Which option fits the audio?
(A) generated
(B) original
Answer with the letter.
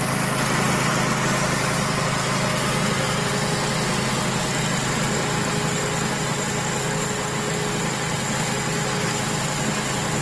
B